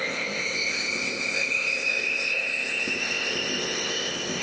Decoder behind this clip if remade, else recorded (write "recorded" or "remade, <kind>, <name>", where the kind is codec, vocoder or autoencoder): remade, codec, ZipCodec